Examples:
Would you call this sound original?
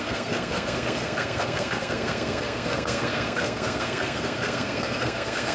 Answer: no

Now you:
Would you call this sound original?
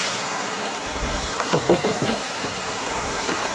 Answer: no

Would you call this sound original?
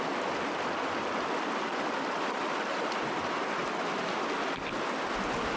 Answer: yes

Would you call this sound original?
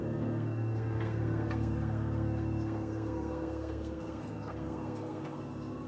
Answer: no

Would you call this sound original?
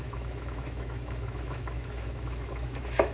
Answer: no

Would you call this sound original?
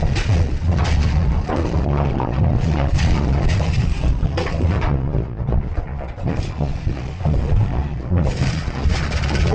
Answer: no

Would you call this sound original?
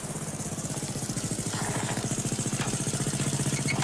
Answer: yes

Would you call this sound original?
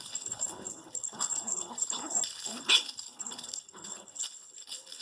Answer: no